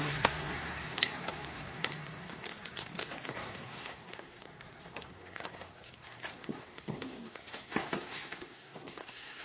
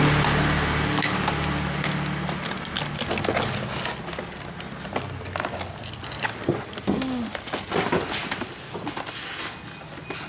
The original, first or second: second